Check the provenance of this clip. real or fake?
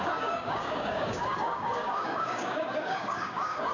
fake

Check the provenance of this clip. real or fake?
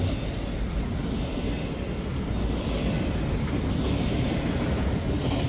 real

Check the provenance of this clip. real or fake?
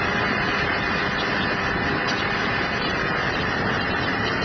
fake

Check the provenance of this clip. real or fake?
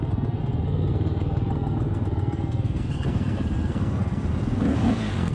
fake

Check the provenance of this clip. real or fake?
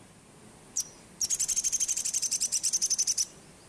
real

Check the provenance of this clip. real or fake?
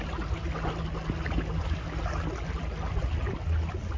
real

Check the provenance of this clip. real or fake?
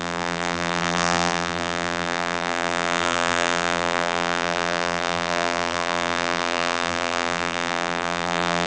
fake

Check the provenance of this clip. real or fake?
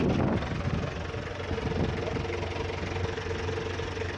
real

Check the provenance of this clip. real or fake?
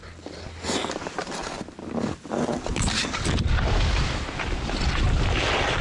real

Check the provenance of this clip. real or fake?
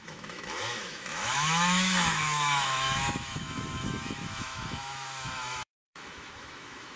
fake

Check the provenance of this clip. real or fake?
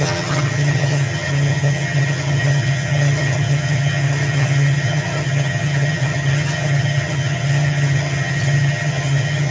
fake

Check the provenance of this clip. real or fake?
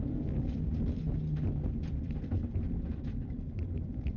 real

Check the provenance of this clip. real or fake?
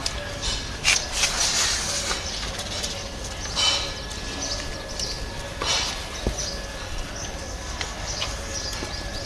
real